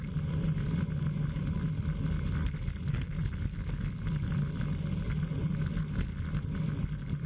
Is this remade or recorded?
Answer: recorded